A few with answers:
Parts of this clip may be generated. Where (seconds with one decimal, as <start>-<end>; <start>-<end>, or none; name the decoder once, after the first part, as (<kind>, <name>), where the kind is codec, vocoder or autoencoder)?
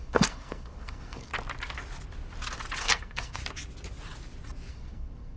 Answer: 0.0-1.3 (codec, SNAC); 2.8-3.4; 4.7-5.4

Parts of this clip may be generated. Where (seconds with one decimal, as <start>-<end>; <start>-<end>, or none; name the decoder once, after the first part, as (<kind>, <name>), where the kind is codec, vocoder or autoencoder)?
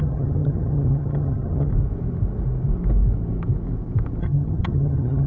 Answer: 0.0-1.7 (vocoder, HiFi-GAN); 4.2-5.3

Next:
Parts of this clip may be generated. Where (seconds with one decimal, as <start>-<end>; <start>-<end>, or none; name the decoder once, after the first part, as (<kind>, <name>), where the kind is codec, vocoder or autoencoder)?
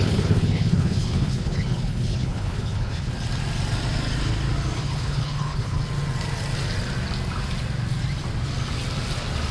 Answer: 0.0-3.1 (codec, HILCodec); 4.8-5.8